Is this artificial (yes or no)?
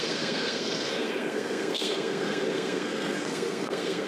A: yes